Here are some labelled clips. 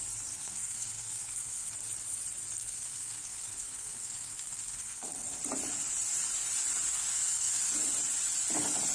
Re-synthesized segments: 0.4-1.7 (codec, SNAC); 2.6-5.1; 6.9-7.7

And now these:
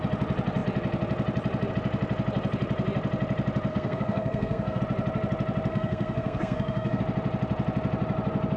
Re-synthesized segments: 3.7-4.8 (codec, SNAC); 5.7-7.0

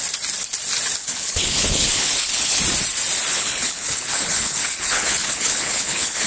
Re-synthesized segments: 1.0-2.6 (codec, HILCodec); 3.3-6.3

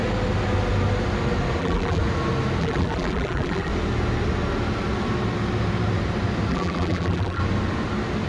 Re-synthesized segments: 1.6-2.0 (vocoder, BigVGAN v2); 2.6-3.7; 6.5-7.4

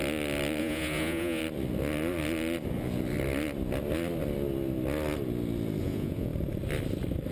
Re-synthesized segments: 0.6-1.4 (vocoder, Vocos); 5.8-6.3